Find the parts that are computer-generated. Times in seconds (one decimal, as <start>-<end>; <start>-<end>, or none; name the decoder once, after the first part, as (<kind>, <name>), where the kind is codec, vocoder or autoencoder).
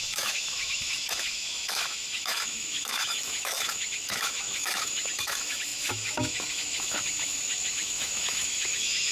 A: 0.0-9.1 (autoencoder, DAC-VAE)